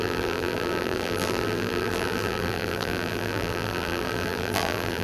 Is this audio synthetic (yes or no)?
yes